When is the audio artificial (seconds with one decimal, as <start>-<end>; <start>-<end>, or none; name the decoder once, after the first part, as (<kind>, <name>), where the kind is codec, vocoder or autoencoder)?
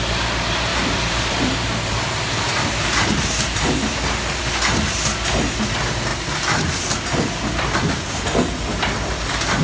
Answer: 0.7-4.4 (vocoder, BigVGAN v2)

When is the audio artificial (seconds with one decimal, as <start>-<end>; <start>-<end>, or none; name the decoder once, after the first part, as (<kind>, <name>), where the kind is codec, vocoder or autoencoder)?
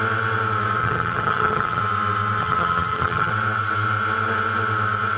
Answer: 0.8-1.8 (vocoder, HiFi-GAN); 2.4-3.3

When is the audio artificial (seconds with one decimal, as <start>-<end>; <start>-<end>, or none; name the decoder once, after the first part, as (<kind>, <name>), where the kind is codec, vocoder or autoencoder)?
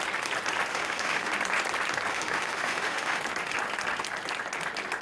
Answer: 0.7-1.3 (autoencoder, DAC-VAE); 2.1-3.2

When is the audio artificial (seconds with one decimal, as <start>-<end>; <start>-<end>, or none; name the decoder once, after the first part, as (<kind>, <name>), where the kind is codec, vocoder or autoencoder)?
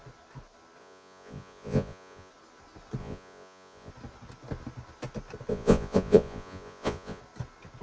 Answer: 0.8-2.3 (vocoder, Vocos); 3.0-3.9; 5.5-7.2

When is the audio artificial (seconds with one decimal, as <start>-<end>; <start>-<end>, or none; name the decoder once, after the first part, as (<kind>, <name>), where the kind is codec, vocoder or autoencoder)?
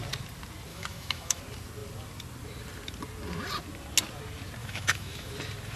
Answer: 0.7-1.4 (autoencoder, DAC-VAE); 4.6-5.3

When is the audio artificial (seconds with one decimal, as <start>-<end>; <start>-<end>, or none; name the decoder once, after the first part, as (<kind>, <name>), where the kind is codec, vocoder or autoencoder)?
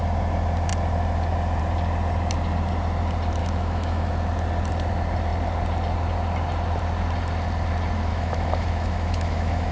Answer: 3.4-4.1 (autoencoder, DAC-VAE); 8.1-9.7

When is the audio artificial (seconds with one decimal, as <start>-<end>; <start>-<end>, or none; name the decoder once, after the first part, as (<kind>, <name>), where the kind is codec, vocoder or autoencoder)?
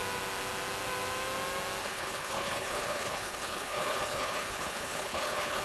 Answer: 1.8-5.6 (codec, HILCodec)